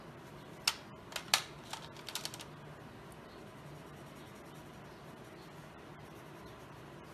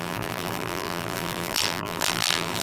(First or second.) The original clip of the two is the first